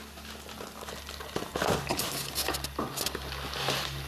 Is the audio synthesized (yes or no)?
no